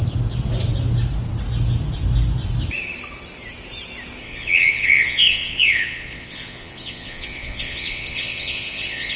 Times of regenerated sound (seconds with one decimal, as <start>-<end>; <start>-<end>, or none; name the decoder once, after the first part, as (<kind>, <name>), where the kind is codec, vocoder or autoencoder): 4.2-9.2 (vocoder, Vocos)